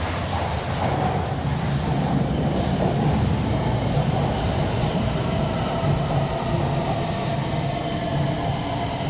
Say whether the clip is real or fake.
real